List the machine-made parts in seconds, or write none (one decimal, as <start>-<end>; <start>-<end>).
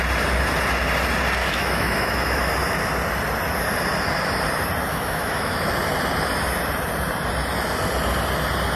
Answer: 1.4-2.5; 4.9-5.7